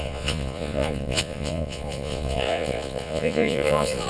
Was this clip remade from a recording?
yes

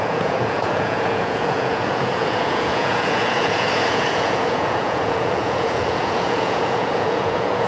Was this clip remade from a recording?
yes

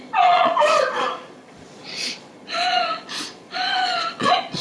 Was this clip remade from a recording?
yes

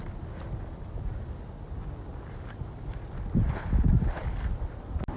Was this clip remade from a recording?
no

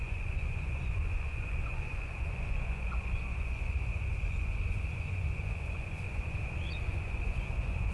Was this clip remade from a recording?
yes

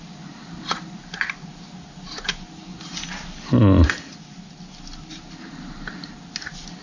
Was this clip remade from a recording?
no